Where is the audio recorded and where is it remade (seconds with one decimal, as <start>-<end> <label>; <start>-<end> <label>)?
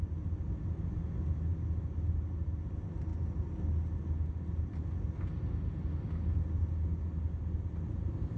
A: 0.0-8.4 recorded